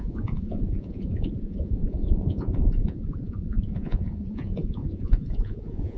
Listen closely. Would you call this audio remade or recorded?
remade